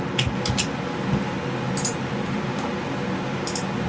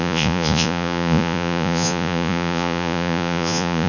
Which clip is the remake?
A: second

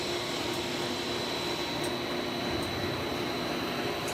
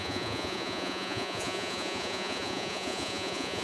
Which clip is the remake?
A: second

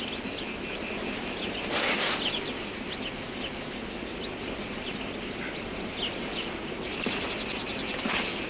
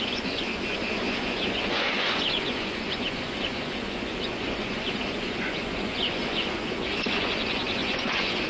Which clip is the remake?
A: second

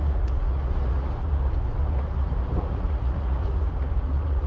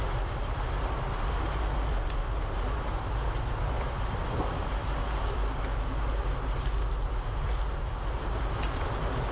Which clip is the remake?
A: first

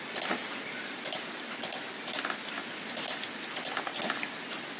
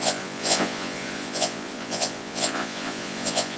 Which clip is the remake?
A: second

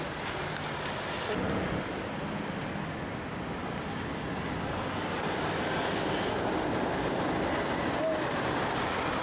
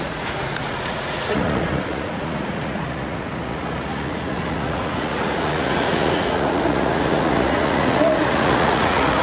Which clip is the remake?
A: second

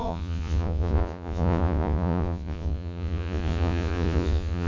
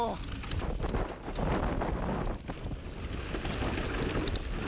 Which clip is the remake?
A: first